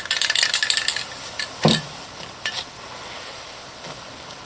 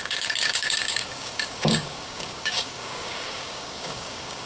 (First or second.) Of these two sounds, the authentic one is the first